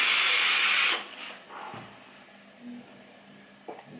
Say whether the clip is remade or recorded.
recorded